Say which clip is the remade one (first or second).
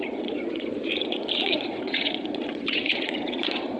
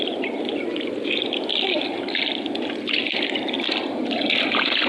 first